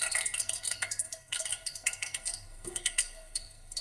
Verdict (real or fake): fake